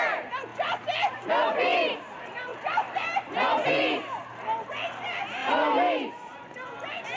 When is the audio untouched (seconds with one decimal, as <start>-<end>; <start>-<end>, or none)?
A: 0.0-0.5; 1.3-2.5; 3.3-4.2; 4.7-5.4; 5.9-7.2